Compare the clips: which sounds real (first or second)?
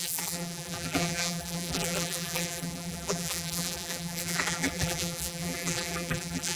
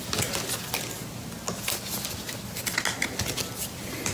second